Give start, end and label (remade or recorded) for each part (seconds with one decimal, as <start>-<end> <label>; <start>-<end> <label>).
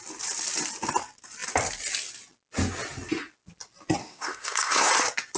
0.0-4.0 recorded; 4.0-4.9 remade; 4.9-5.4 recorded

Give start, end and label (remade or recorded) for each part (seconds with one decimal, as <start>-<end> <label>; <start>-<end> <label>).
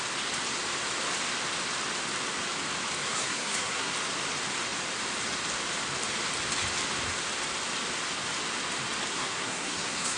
0.0-3.0 recorded; 3.0-3.9 remade; 3.9-9.1 recorded; 9.1-10.2 remade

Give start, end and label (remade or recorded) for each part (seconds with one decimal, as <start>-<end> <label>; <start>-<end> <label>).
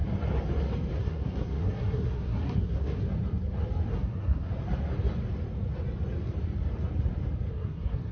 0.0-1.0 recorded; 1.0-3.0 remade; 3.0-3.9 recorded; 3.9-4.5 remade; 4.5-7.5 recorded; 7.5-8.1 remade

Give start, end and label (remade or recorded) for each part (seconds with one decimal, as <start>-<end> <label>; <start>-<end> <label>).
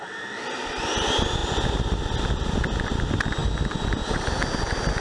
0.0-5.0 recorded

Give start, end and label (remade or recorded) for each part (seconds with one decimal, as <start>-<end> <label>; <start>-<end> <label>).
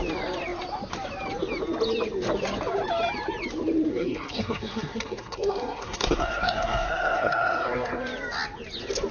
0.0-3.9 recorded; 3.9-8.0 remade; 8.0-9.1 recorded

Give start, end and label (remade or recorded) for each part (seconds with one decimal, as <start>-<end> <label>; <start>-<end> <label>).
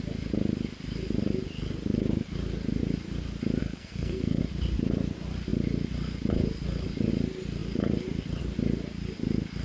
0.0-3.6 recorded; 3.6-4.4 remade; 4.4-9.6 recorded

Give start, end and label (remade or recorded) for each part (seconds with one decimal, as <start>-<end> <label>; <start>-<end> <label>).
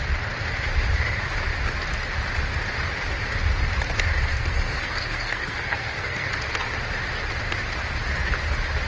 0.0-4.3 recorded; 4.3-6.3 remade; 6.3-8.9 recorded